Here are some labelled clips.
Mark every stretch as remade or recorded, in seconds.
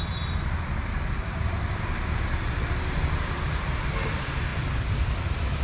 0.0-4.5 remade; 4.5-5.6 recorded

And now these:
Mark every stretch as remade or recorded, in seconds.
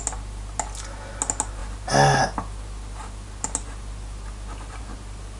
0.0-5.4 recorded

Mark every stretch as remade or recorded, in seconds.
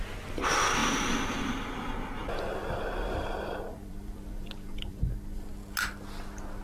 0.0-0.8 recorded; 0.8-1.4 remade; 1.4-2.2 recorded; 2.2-5.5 remade; 5.5-6.6 recorded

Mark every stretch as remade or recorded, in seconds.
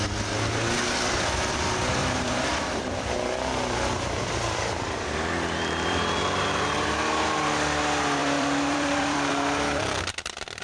0.0-2.0 recorded; 2.0-6.0 remade; 6.0-8.2 recorded; 8.2-9.3 remade; 9.3-10.6 recorded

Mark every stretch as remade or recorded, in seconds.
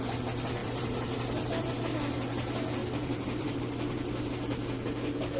0.0-0.6 recorded; 0.6-1.7 remade; 1.7-2.8 recorded; 2.8-3.6 remade; 3.6-5.4 recorded